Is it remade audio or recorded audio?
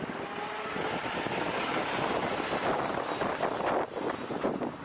recorded